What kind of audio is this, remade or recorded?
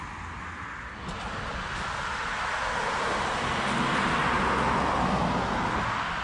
recorded